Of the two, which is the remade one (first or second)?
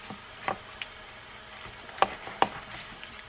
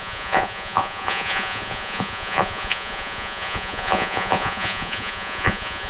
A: second